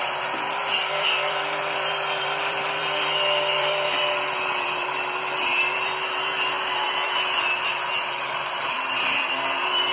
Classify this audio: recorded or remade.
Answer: remade